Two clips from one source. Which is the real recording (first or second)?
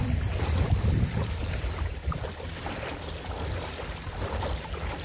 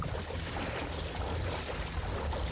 second